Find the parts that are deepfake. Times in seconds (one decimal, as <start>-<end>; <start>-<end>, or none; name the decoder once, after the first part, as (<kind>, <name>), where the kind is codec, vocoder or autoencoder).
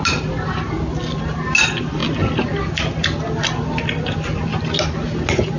none